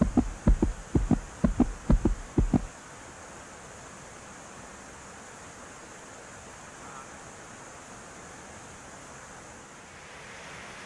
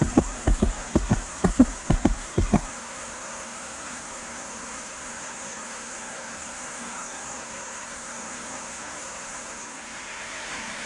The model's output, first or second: second